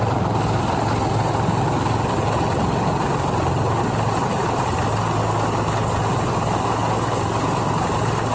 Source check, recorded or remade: recorded